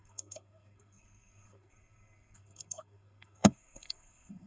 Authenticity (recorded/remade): remade